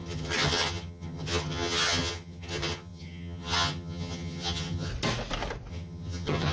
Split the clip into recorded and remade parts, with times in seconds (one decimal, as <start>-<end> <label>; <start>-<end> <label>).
0.0-4.9 remade; 4.9-5.7 recorded; 5.7-6.5 remade